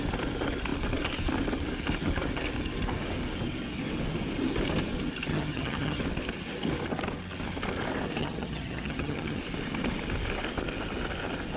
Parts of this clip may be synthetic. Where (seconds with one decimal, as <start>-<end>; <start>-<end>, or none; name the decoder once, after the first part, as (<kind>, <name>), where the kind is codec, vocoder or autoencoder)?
5.3-6.0 (vocoder, HiFi-GAN); 8.2-9.4